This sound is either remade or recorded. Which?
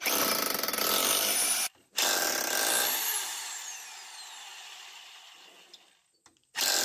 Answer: recorded